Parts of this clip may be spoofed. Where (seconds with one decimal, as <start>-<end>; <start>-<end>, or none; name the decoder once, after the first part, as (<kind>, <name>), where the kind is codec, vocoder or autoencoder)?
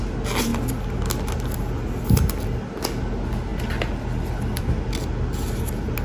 none